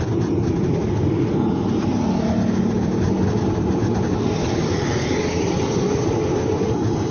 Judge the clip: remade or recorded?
recorded